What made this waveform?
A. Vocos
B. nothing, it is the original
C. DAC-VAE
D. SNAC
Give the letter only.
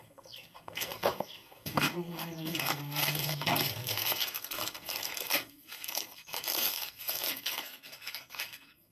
D